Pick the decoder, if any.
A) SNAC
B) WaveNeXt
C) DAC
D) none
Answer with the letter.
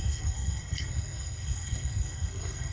A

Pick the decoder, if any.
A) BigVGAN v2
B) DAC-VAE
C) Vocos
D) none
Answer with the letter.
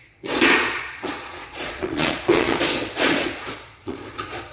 C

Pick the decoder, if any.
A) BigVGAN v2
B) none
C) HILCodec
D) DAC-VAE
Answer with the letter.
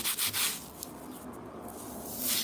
B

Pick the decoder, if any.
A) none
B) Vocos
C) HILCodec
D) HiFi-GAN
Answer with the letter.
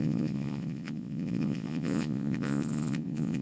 B